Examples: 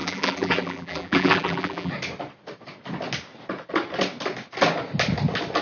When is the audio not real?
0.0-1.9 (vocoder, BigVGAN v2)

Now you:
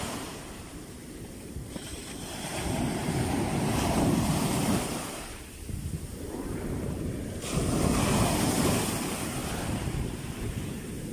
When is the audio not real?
0.0-4.9 (vocoder, BigVGAN v2); 8.6-11.1

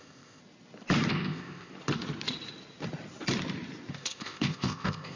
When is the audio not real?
0.0-0.4 (codec, ZipCodec); 1.1-1.7; 3.9-5.2

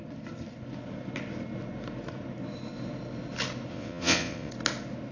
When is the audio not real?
3.7-4.5 (vocoder, WaveNeXt)

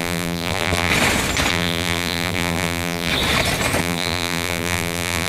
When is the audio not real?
0.0-0.9 (vocoder, BigVGAN v2); 1.5-3.1; 3.8-5.3

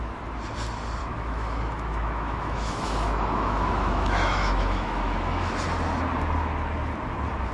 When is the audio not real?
1.0-5.5 (autoencoder, DAC-VAE)

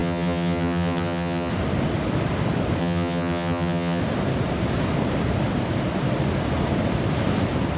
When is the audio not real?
0.0-1.5 (vocoder, HiFi-GAN); 2.8-4.0